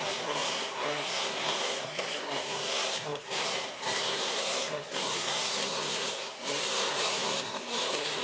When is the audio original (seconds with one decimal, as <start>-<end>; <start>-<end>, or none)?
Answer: none

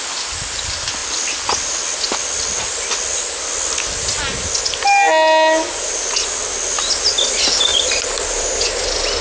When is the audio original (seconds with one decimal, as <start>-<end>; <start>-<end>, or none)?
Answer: 0.0-7.7; 8.7-9.2

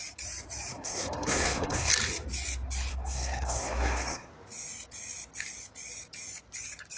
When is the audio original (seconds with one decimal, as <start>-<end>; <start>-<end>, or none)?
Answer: 0.0-0.7; 1.9-2.9; 4.3-7.0

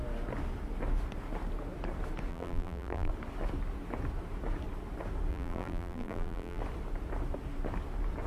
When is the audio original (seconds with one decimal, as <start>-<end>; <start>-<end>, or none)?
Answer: 0.0-2.3; 3.1-5.3; 6.6-8.3

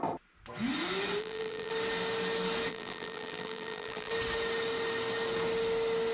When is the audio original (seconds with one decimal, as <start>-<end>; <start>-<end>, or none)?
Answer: 0.0-1.2; 1.7-2.7; 4.1-6.1

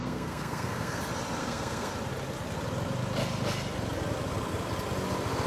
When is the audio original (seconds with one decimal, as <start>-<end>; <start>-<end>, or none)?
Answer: 1.0-1.4; 1.9-5.5

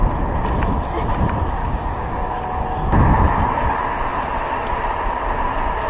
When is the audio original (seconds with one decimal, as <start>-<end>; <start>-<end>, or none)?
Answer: 0.0-1.6; 2.6-5.9